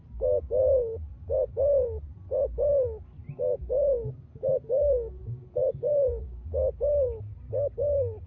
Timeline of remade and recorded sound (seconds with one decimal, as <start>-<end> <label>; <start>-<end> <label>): 0.0-5.2 recorded; 5.2-6.3 remade; 6.3-8.3 recorded